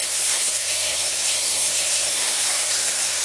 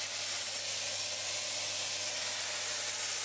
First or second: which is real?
second